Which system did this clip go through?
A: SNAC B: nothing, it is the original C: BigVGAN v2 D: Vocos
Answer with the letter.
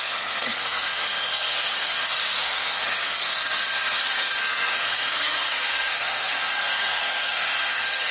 A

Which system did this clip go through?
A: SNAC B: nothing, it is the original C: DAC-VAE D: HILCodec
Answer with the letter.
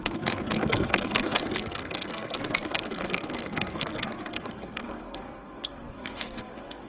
A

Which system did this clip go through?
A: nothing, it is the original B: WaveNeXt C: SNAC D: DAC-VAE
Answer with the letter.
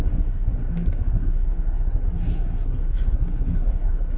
C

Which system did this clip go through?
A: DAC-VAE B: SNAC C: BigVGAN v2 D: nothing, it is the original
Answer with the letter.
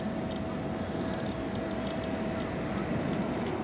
D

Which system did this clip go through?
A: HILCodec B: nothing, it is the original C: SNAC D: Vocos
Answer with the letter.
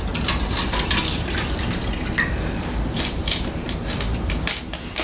B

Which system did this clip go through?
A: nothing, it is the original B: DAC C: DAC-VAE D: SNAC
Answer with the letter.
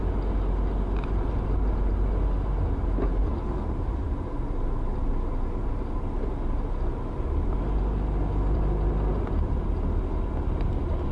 A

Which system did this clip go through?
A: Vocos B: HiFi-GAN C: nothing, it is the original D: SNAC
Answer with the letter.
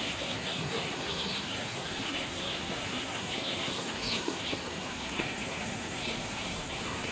D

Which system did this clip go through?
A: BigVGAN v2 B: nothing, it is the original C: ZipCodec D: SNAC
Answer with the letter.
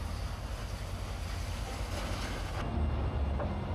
B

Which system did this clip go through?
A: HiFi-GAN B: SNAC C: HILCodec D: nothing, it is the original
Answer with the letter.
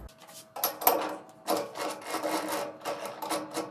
D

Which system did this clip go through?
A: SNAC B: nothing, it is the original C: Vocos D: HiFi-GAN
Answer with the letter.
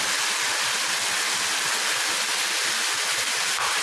B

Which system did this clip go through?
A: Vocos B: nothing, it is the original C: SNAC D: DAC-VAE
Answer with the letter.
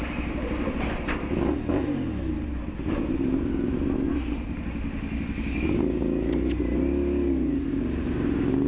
B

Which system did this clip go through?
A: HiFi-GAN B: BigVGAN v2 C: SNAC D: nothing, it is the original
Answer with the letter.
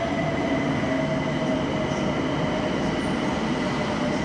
D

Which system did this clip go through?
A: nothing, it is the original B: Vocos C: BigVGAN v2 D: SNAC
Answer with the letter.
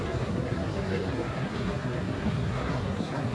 D